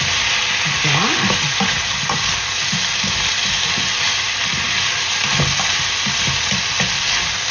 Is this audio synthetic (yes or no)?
no